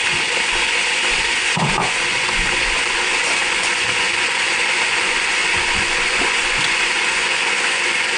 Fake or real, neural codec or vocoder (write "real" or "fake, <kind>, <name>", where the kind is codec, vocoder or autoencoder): fake, vocoder, Vocos